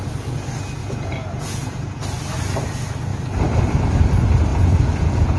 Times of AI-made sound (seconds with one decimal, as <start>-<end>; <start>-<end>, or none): 0.8-2.0; 4.5-5.4